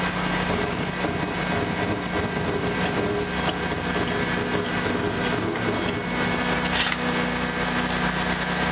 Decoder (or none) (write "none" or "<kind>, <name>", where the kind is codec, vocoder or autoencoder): none